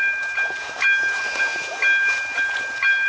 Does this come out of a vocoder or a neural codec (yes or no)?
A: no